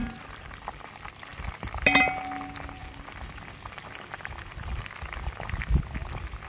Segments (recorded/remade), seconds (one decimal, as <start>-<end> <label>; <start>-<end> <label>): 0.0-0.9 remade; 0.9-2.8 recorded; 2.8-4.8 remade; 4.8-6.5 recorded